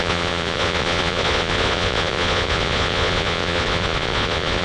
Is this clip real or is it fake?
fake